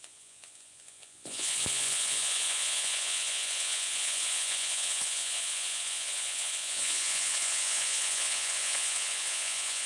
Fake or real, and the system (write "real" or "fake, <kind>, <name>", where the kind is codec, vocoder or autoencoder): fake, vocoder, Vocos